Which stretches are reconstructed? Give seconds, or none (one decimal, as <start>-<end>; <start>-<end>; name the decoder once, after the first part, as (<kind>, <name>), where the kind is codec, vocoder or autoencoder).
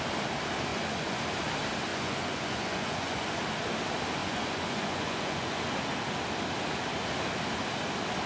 0.7-1.2 (vocoder, Vocos); 1.9-3.4; 4.2-5.6